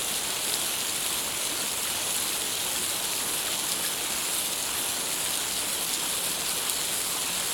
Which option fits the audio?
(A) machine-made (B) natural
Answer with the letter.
B